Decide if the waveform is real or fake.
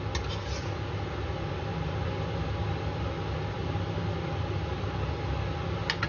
real